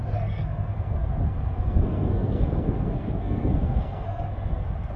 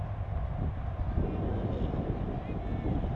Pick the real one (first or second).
second